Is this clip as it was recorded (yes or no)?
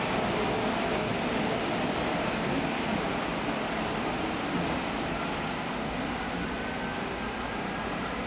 yes